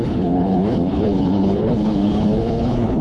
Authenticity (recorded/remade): remade